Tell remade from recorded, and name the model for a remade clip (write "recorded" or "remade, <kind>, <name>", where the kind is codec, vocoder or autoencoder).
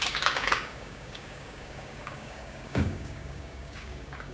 remade, codec, DAC